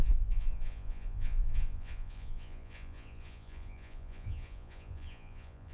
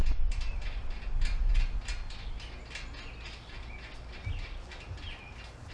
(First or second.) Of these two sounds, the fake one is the first